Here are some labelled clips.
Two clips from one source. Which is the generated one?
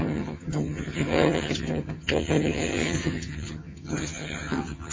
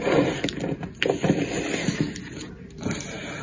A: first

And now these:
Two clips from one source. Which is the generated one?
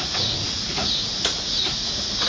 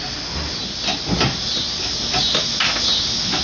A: first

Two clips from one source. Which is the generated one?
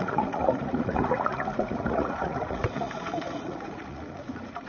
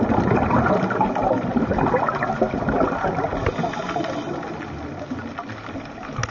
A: first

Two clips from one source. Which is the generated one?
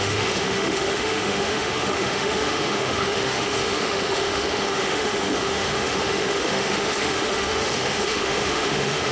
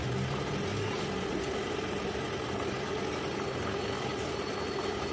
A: first